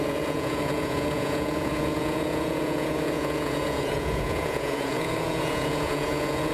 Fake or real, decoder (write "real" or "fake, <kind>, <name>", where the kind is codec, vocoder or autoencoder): fake, vocoder, Vocos